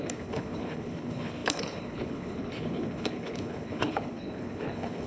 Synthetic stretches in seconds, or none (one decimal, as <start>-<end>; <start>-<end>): 0.0-5.1